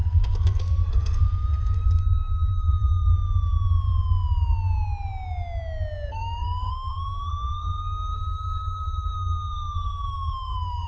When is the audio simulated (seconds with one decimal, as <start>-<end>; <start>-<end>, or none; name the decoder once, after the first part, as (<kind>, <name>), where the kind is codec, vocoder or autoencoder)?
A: 0.0-3.1 (codec, SNAC); 6.1-10.9